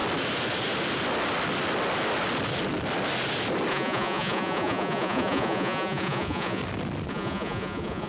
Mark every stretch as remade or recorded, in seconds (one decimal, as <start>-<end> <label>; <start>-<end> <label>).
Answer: 0.0-3.7 recorded; 3.7-6.6 remade; 6.6-7.1 recorded; 7.1-8.1 remade